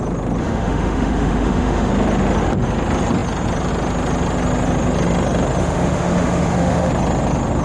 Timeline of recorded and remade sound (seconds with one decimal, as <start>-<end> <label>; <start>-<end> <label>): 0.0-0.4 recorded; 0.4-1.9 remade; 1.9-5.6 recorded; 5.6-6.9 remade; 6.9-7.6 recorded